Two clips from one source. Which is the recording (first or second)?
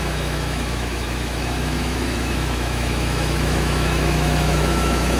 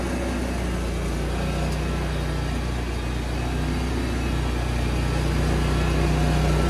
second